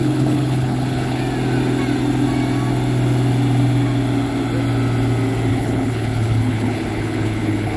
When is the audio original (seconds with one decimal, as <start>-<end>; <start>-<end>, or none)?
1.2-5.5

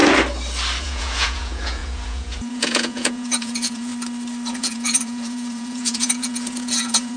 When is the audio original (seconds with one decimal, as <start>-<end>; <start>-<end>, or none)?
0.0-0.8; 3.9-4.5

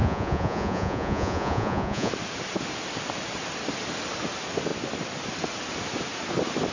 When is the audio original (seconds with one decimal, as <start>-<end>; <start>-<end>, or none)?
2.1-6.7

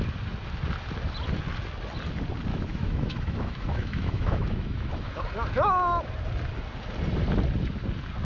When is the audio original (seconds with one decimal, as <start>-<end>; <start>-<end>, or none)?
0.0-2.5; 5.2-8.2

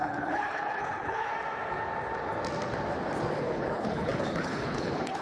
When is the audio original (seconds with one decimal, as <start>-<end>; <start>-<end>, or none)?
1.3-3.4

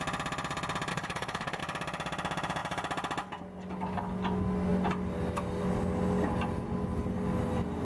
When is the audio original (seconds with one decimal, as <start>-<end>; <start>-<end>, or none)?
0.0-0.9; 1.6-7.8

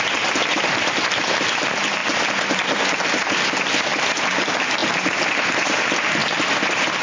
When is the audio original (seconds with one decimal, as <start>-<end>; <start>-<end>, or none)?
0.0-7.0

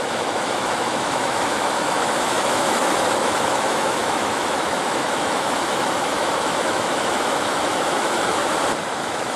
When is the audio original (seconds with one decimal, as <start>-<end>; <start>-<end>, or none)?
8.4-8.9